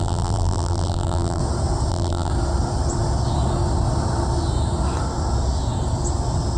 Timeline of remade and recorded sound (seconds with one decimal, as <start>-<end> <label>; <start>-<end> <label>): 0.0-1.4 remade; 1.4-1.9 recorded; 1.9-2.3 remade; 2.3-6.6 recorded